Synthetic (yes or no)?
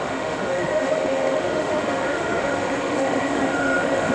yes